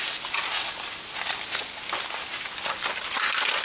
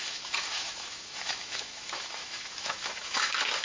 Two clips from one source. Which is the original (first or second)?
first